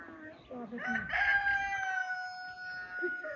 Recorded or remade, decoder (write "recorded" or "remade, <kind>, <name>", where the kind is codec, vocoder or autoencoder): recorded